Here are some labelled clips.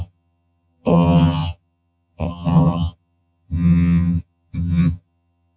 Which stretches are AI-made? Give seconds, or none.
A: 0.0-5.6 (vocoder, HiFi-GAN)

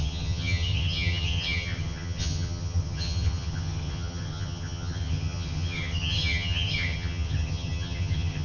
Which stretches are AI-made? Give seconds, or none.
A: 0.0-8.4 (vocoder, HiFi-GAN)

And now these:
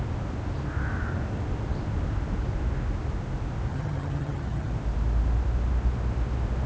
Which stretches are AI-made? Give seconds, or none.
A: 3.7-4.7 (vocoder, HiFi-GAN)